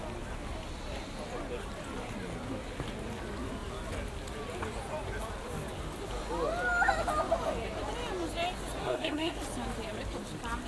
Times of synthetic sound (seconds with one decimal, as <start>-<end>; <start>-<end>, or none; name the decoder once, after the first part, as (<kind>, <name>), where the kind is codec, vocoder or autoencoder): 8.8-9.4 (codec, SNAC)

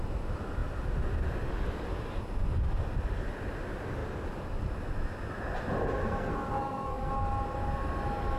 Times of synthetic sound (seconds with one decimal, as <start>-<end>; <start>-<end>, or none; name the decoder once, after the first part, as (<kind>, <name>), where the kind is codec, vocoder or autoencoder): 6.0-7.1 (codec, SNAC)